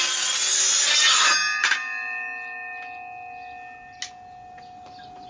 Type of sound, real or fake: real